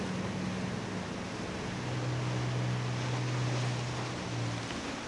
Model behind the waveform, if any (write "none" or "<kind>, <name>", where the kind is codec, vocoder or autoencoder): none